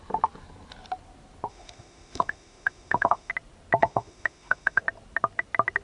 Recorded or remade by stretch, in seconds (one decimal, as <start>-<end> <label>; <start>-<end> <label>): 0.0-1.5 recorded; 1.5-3.3 remade; 3.3-3.8 recorded; 3.8-4.8 remade; 4.8-5.8 recorded